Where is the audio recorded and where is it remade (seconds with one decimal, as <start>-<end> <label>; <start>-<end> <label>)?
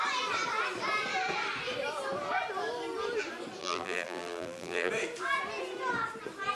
0.0-3.6 recorded; 3.6-4.9 remade; 4.9-6.5 recorded